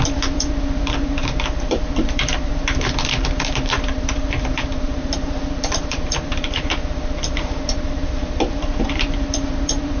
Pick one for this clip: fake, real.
fake